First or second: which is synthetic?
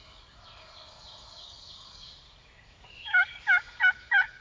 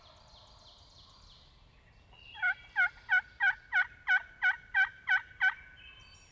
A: first